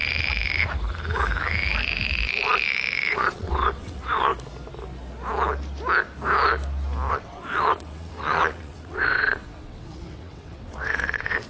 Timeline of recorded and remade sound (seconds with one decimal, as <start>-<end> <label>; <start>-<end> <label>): 0.0-3.1 recorded; 3.1-4.3 remade; 4.3-7.1 recorded; 7.1-11.5 remade